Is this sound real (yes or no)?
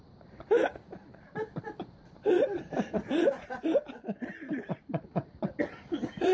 no